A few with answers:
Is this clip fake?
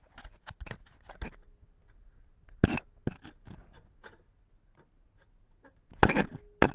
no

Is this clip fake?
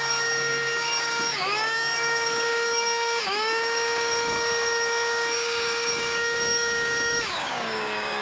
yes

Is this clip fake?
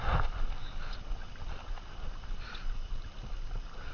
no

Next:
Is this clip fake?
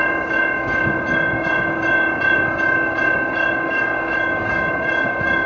yes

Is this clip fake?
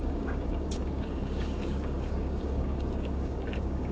yes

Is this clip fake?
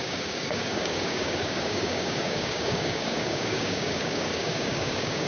yes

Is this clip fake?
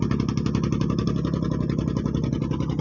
no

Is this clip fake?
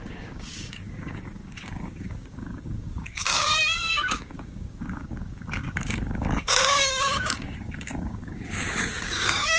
yes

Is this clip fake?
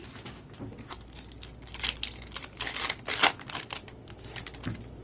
no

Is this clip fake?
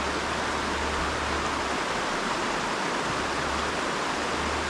no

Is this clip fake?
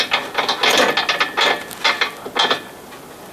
no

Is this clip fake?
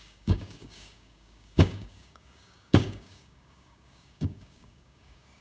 yes